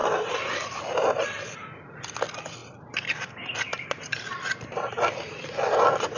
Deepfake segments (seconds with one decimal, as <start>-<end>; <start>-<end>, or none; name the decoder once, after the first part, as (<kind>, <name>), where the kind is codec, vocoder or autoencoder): none

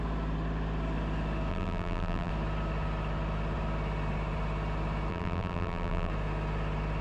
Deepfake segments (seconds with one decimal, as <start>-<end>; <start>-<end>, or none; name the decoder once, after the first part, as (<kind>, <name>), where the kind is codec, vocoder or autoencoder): 1.5-2.3 (vocoder, BigVGAN v2); 5.1-6.1

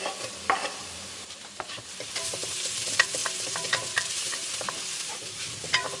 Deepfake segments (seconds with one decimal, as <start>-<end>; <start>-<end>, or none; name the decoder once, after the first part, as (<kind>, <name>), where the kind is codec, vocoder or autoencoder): 0.8-2.6 (vocoder, BigVGAN v2); 3.2-5.4

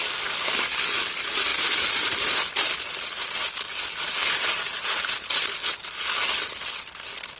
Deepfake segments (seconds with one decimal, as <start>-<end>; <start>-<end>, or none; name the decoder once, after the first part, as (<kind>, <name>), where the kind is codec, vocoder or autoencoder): none

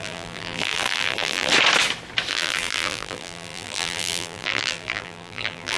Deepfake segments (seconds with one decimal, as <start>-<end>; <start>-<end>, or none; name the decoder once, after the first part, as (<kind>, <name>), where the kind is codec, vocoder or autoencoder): 0.0-1.5 (vocoder, BigVGAN v2); 2.3-5.8

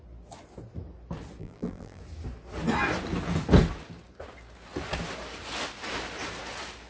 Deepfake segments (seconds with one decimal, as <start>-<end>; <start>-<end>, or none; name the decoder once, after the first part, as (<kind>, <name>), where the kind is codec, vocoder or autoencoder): 1.4-2.0 (vocoder, BigVGAN v2)

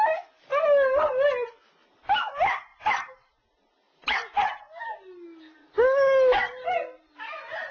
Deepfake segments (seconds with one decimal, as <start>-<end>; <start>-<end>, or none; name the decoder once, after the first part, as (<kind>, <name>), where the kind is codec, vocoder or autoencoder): 2.7-3.3 (vocoder, BigVGAN v2)